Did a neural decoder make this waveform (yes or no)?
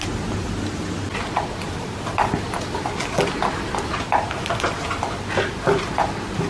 no